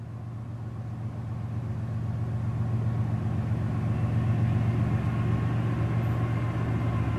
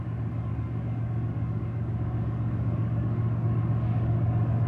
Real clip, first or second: first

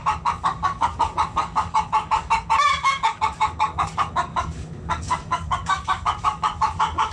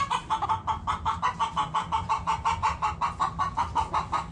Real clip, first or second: second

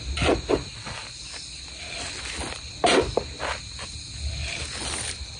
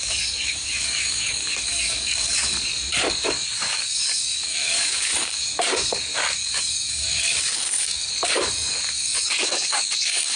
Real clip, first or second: first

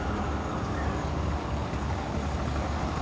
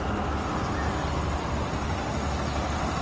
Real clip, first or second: second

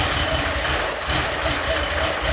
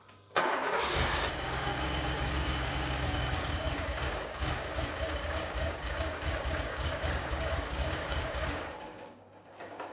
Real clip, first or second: first